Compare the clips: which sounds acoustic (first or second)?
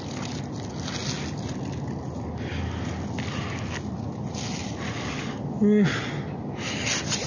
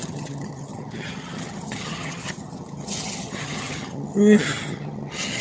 first